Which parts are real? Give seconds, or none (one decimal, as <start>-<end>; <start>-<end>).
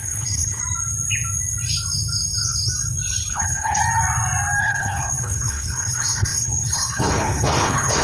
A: 0.6-3.3; 3.8-4.6